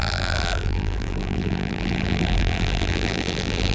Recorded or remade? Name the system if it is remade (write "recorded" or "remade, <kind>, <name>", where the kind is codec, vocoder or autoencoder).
remade, vocoder, BigVGAN v2